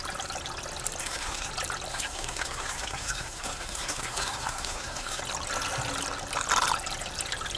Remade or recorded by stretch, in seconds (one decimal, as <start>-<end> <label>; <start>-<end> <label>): 0.0-1.0 recorded; 1.0-1.5 remade; 1.5-1.9 recorded; 1.9-5.2 remade; 5.2-7.6 recorded